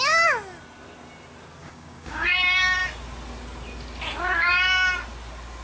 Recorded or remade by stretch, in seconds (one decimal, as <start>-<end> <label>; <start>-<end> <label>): 0.0-1.6 recorded; 1.6-2.3 remade; 2.3-5.6 recorded